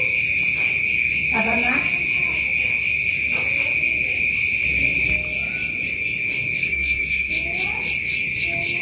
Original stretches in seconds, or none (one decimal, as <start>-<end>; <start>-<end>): 0.0-6.6; 7.3-8.8